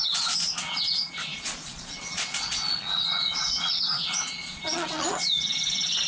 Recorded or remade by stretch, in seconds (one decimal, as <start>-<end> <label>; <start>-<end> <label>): 0.0-6.1 remade